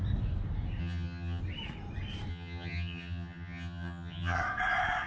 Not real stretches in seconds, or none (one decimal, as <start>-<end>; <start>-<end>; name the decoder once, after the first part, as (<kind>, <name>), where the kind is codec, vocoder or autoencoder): 0.8-1.4 (vocoder, HiFi-GAN); 2.3-4.4